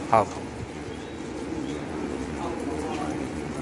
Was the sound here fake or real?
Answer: fake